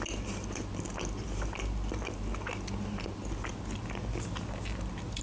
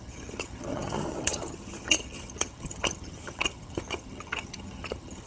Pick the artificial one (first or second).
second